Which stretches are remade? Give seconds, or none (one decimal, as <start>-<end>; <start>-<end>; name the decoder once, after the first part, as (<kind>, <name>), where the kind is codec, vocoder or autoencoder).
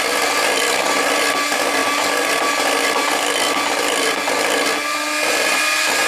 none